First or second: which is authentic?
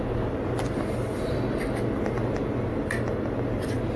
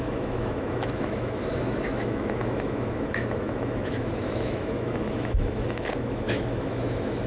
first